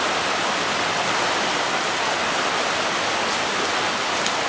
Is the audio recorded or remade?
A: recorded